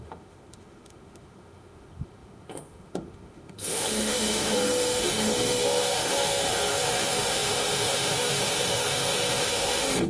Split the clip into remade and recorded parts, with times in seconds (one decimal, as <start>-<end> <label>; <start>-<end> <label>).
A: 0.0-10.1 remade